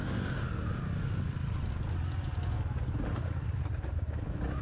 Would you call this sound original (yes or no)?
yes